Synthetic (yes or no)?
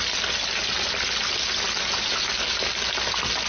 no